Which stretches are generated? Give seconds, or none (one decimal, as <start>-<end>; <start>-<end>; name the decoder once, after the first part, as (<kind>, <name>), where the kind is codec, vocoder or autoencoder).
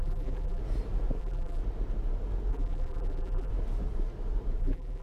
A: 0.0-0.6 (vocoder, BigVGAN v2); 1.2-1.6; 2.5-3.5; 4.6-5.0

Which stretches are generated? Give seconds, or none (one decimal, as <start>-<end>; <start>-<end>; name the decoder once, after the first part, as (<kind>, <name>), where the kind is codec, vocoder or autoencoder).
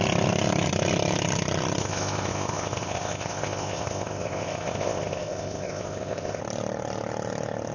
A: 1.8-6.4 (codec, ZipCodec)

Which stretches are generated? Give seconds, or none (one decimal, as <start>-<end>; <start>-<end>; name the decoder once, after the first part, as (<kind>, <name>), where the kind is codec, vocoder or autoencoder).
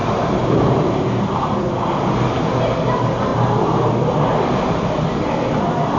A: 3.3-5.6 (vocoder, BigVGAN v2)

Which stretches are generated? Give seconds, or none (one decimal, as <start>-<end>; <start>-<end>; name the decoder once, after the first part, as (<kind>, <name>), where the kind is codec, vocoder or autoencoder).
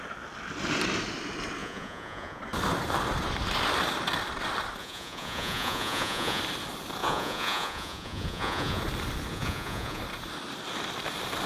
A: 1.6-2.4 (vocoder, Vocos); 4.8-6.4; 7.0-8.8; 9.3-10.0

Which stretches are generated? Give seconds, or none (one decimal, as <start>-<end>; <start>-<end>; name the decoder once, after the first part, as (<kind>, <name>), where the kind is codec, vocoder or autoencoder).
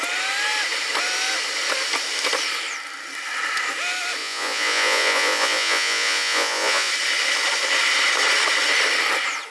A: 4.2-6.9 (vocoder, Vocos)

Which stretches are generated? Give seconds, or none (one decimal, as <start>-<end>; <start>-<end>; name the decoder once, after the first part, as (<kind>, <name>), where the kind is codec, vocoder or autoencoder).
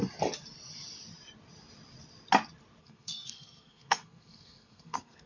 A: 2.8-5.3 (codec, SNAC)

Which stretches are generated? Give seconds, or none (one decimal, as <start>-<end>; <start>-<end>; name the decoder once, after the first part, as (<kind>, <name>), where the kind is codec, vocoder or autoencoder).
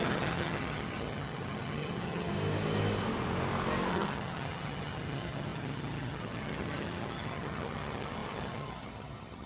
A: 0.0-2.3 (vocoder, HiFi-GAN); 3.9-9.5